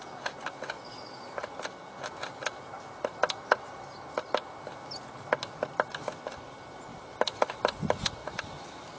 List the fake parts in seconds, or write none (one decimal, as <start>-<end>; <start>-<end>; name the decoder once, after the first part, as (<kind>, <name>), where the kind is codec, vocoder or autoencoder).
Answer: 6.9-7.6 (vocoder, BigVGAN v2); 8.2-9.0